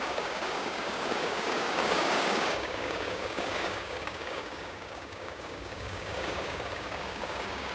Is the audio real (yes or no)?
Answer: no